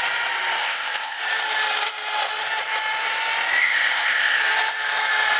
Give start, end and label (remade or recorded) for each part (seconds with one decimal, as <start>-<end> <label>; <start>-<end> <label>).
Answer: 0.0-0.6 recorded; 0.6-1.2 remade; 1.2-3.6 recorded; 3.6-4.4 remade; 4.4-5.4 recorded